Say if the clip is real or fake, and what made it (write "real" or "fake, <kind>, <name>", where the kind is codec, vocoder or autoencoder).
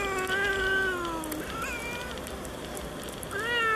real